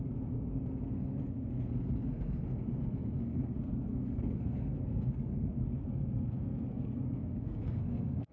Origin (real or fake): fake